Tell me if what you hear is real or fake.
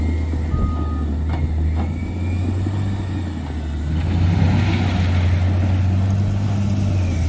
real